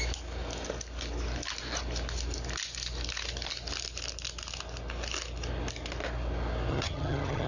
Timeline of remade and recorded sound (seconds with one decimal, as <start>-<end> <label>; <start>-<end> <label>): 0.0-6.7 recorded; 6.7-7.5 remade